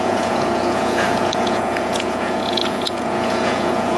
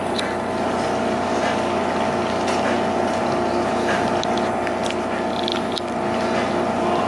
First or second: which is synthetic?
first